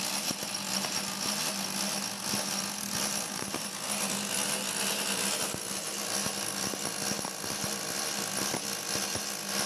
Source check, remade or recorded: recorded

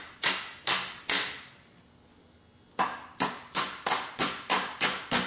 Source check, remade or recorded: recorded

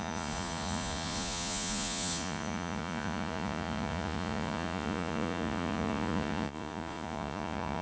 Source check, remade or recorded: remade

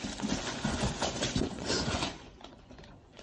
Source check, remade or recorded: remade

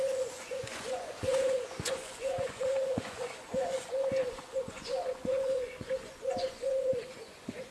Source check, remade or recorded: remade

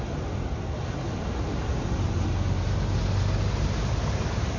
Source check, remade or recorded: recorded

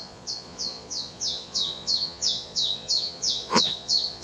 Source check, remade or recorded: remade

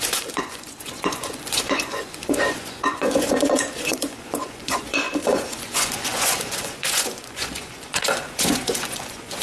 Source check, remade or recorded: remade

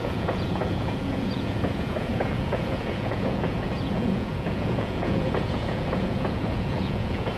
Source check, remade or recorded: remade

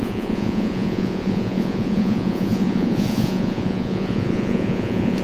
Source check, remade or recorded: remade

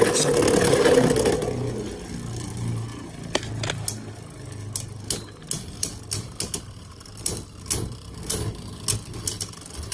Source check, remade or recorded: recorded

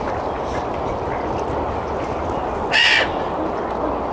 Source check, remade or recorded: recorded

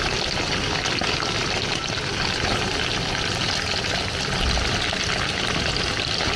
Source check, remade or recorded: recorded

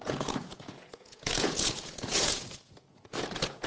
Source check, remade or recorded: remade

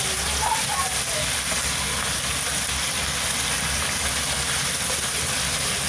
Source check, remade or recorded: recorded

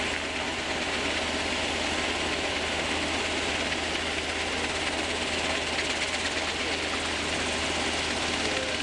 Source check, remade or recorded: recorded